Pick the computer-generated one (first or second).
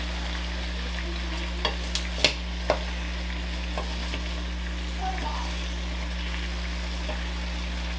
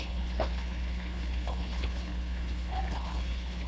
second